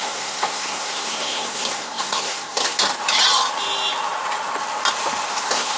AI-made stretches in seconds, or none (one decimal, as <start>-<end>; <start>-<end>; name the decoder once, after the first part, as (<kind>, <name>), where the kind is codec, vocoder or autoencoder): 0.0-2.6 (codec, SNAC); 5.3-5.8

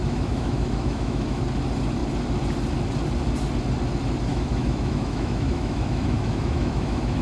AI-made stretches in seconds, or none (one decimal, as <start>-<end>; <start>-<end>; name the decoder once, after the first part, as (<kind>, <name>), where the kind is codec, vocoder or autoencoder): 0.0-1.4 (autoencoder, DAC-VAE); 4.3-7.2

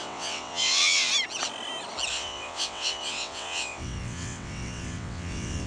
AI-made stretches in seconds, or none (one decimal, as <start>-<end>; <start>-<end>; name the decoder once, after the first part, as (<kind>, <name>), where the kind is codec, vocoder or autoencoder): 0.0-1.1 (vocoder, WaveNeXt); 2.1-5.7

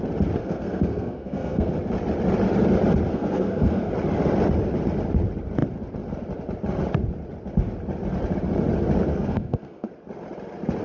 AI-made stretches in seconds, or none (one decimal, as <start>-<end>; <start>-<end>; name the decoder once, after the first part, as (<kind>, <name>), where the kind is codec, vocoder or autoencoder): 0.4-1.7 (codec, SNAC); 3.1-3.9; 9.1-9.9

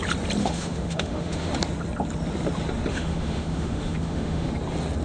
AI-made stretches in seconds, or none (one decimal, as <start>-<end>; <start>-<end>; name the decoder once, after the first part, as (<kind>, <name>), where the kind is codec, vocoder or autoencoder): 0.4-1.5 (autoencoder, DAC-VAE); 2.9-4.5

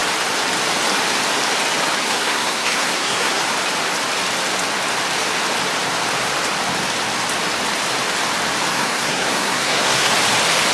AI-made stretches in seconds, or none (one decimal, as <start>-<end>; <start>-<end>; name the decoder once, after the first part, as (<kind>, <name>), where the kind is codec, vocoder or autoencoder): 2.0-3.4 (codec, SNAC); 8.7-10.1

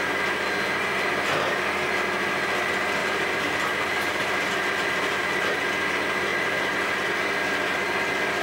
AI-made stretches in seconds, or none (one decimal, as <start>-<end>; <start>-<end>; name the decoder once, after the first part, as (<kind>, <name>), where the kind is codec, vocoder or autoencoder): 3.0-4.5 (vocoder, BigVGAN v2); 6.3-6.8